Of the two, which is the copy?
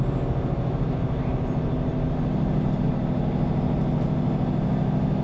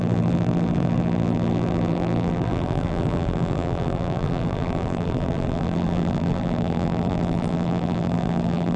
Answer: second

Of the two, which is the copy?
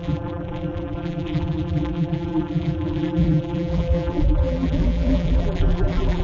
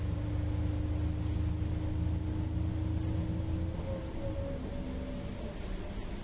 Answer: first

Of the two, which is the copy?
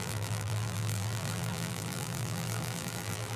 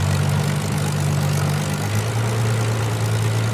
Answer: first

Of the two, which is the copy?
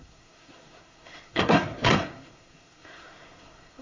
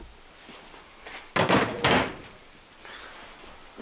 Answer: first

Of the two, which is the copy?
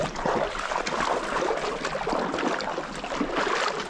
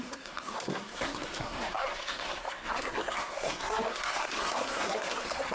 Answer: second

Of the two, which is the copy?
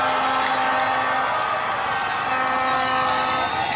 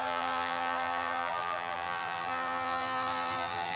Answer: second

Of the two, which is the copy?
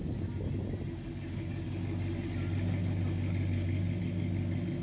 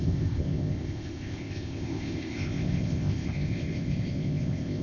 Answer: second